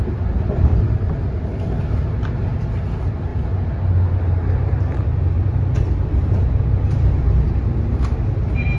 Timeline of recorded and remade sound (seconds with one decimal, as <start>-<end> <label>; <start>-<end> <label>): 0.0-8.8 recorded